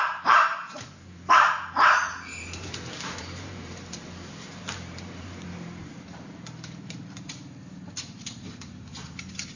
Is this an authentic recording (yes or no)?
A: no